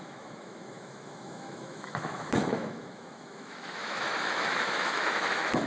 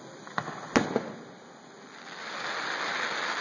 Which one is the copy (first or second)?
first